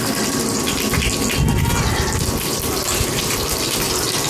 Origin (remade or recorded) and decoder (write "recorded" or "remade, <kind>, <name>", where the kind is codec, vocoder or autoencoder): recorded